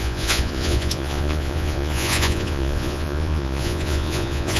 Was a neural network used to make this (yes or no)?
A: yes